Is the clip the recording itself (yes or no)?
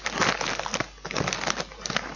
yes